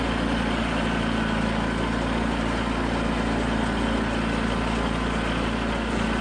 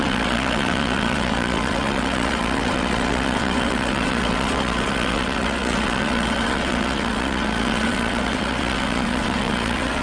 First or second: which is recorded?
first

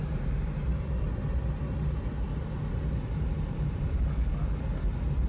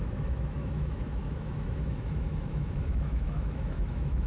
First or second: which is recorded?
first